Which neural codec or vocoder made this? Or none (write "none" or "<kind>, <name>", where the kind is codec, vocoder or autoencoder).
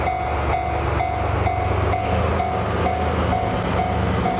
none